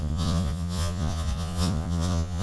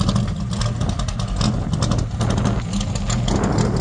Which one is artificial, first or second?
first